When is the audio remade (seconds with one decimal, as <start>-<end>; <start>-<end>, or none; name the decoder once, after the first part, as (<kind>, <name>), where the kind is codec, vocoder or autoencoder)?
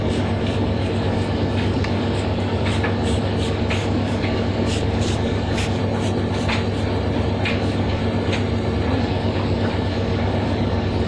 0.0-5.8 (codec, DAC); 7.5-8.0; 9.0-11.1